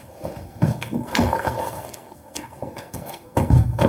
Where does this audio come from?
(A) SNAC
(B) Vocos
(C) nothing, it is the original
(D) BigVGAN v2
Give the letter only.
A